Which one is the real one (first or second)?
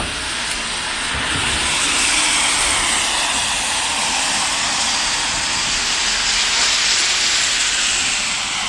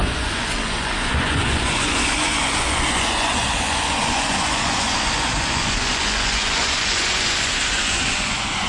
first